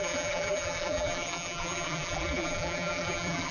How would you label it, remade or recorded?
remade